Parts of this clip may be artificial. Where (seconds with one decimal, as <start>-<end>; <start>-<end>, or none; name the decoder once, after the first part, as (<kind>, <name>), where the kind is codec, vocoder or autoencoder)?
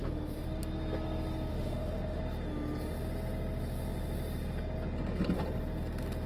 1.5-2.2 (autoencoder, DAC-VAE)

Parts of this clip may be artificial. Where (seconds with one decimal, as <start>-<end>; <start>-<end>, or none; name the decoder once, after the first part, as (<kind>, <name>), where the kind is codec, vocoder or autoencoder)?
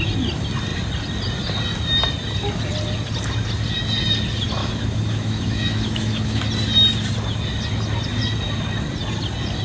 4.6-6.4 (autoencoder, DAC-VAE)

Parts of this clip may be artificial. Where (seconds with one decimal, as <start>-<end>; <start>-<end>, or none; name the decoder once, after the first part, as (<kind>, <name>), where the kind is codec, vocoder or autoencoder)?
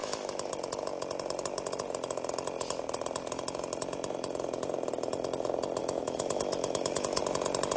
0.0-0.5 (autoencoder, DAC-VAE); 5.8-7.2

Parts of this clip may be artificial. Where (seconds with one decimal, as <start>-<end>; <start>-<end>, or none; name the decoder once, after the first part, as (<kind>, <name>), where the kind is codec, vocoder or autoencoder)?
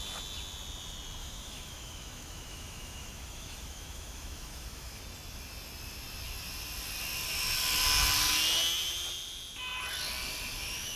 1.2-5.0 (autoencoder, DAC-VAE)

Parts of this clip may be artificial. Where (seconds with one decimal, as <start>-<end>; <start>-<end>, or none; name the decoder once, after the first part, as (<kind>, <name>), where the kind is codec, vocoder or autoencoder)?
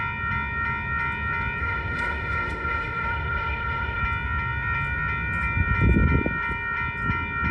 1.6-4.0 (autoencoder, DAC-VAE)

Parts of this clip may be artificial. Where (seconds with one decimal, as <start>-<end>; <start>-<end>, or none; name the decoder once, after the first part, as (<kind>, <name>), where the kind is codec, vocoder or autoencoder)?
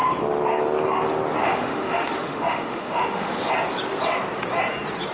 1.4-3.5 (autoencoder, DAC-VAE)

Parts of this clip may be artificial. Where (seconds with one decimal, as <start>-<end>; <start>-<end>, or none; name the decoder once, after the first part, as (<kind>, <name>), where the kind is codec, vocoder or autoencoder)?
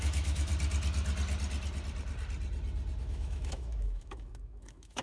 0.0-0.5 (autoencoder, DAC-VAE); 3.0-5.0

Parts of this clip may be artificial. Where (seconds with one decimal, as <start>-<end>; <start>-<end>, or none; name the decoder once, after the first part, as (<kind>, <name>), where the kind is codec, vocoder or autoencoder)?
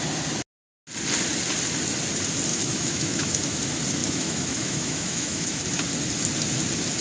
2.5-3.6 (autoencoder, DAC-VAE); 4.0-5.6